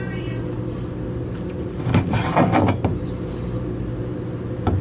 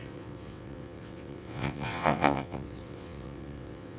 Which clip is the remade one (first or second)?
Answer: second